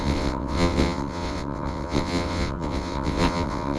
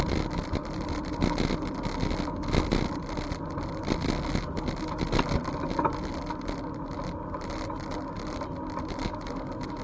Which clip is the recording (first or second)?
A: second